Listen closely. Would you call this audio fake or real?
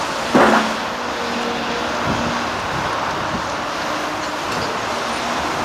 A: real